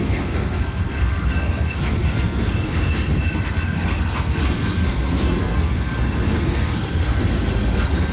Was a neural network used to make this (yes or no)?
yes